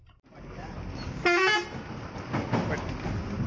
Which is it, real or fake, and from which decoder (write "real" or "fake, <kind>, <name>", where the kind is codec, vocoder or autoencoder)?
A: real